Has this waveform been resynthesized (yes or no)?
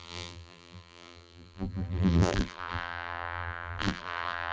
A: yes